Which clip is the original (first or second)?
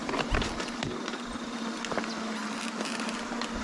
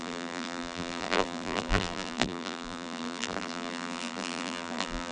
first